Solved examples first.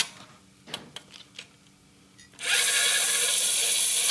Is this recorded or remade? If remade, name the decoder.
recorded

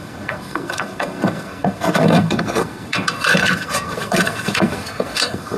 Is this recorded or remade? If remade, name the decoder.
remade, codec, SNAC